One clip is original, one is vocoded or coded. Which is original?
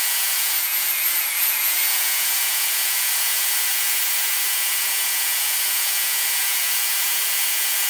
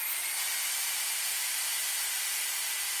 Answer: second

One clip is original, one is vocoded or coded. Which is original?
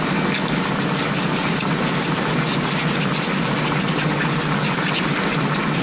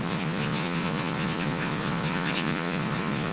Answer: first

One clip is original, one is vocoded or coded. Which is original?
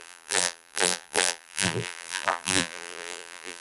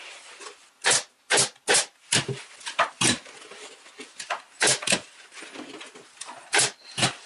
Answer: second